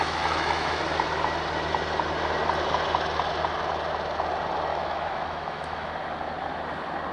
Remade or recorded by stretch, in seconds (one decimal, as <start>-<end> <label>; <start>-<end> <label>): 0.0-0.8 remade; 0.8-4.7 recorded; 4.7-5.9 remade; 5.9-7.1 recorded